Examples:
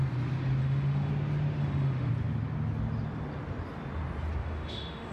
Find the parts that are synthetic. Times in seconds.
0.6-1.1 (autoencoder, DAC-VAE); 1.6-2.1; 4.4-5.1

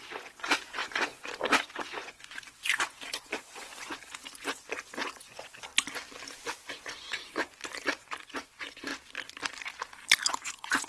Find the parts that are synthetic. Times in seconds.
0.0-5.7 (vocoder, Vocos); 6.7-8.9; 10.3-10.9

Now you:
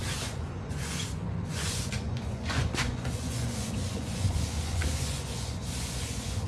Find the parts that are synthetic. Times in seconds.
0.0-6.5 (vocoder, Vocos)

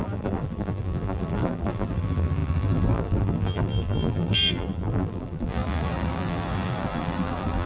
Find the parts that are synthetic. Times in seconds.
0.0-7.7 (vocoder, BigVGAN v2)

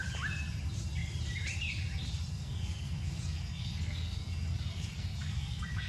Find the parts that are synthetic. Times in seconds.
2.3-5.9 (codec, SNAC)